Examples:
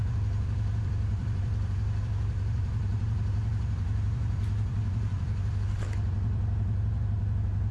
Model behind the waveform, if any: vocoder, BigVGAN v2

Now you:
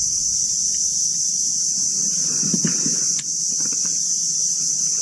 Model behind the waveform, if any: none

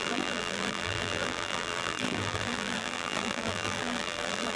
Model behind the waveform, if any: vocoder, BigVGAN v2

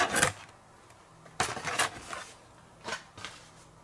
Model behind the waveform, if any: none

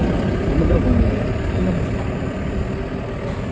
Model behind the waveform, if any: none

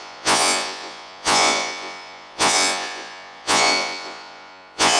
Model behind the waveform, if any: vocoder, Vocos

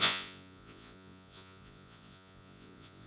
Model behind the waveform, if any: vocoder, Vocos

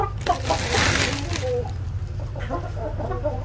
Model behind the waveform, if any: none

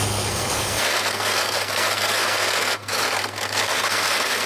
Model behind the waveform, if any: codec, SNAC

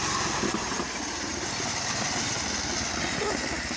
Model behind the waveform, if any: none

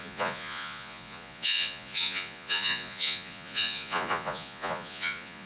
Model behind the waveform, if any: vocoder, Vocos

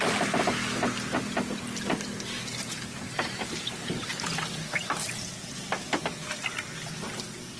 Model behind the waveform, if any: none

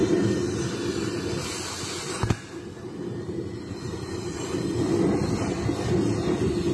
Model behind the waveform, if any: none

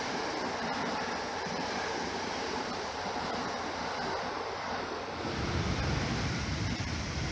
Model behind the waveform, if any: vocoder, BigVGAN v2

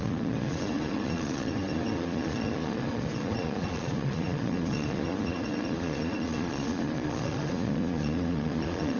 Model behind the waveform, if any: vocoder, Vocos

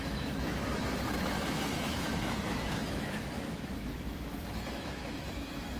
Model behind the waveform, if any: autoencoder, DAC-VAE